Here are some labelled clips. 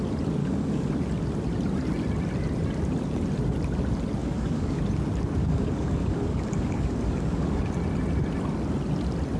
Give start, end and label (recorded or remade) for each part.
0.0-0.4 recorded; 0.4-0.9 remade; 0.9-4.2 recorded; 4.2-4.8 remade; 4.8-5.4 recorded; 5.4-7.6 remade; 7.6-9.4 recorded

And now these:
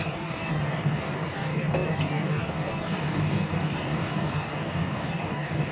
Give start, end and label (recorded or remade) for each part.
0.0-5.7 remade

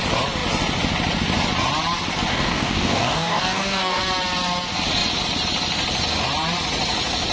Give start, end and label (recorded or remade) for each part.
0.0-2.3 recorded; 2.3-4.0 remade; 4.0-7.3 recorded

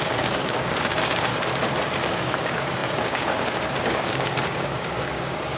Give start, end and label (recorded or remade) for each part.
0.0-1.3 remade; 1.3-2.1 recorded; 2.1-5.6 remade

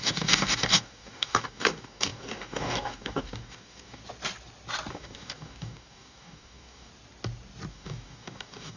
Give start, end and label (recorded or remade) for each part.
0.0-4.0 remade; 4.0-4.9 recorded; 4.9-6.9 remade; 6.9-7.7 recorded; 7.7-8.8 remade

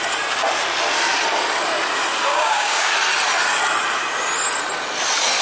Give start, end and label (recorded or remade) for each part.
0.0-2.3 recorded; 2.3-2.9 remade; 2.9-5.4 recorded

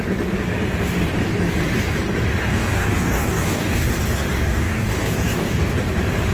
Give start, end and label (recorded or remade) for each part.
0.0-2.5 recorded; 2.5-3.9 remade; 3.9-4.4 recorded; 4.4-5.7 remade; 5.7-6.3 recorded